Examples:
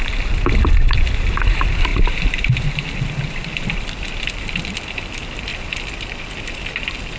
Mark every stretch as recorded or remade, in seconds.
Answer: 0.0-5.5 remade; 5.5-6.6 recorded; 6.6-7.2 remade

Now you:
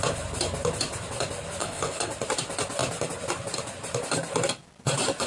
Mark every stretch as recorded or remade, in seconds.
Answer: 0.0-1.6 recorded; 1.6-2.1 remade; 2.1-5.3 recorded